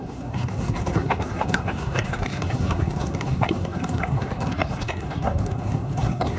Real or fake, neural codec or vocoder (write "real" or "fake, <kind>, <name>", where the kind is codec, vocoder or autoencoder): fake, codec, SNAC